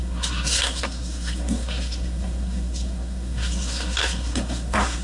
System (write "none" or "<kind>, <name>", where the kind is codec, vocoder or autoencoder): codec, SNAC